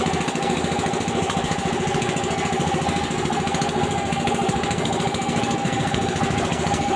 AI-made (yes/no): yes